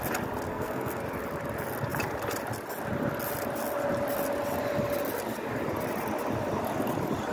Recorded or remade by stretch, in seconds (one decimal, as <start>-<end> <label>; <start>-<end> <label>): 0.0-0.5 recorded; 0.5-1.0 remade; 1.0-7.3 recorded